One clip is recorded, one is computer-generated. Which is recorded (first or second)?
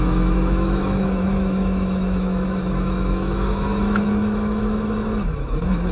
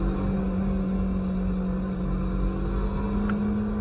second